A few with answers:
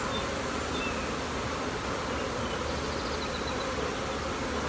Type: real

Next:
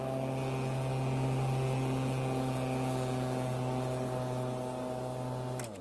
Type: real